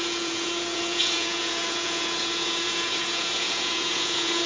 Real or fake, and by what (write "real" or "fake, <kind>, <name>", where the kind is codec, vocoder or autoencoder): fake, vocoder, Vocos